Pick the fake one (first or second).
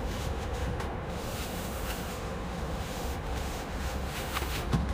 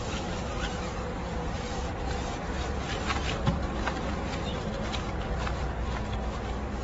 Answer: first